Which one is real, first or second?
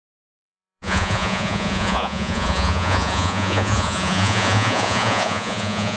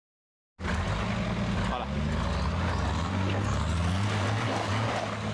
second